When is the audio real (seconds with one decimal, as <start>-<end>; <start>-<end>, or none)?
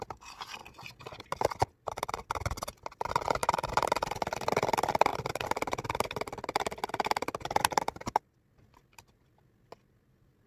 0.0-3.4; 4.1-10.5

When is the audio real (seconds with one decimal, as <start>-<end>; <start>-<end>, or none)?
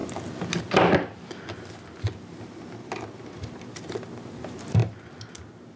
0.0-5.8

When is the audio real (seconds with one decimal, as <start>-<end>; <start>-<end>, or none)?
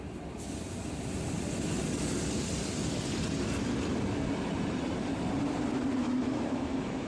0.0-6.0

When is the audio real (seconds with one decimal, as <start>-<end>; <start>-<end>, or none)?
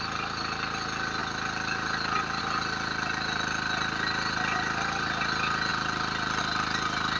0.0-7.2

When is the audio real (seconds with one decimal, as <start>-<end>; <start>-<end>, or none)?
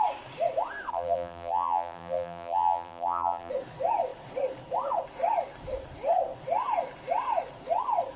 0.0-0.9; 3.5-8.2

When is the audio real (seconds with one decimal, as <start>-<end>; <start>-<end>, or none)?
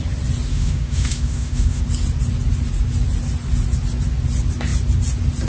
0.0-0.5; 1.8-5.5